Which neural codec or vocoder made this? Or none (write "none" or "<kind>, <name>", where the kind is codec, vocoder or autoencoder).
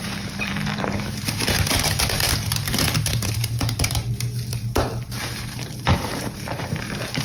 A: vocoder, BigVGAN v2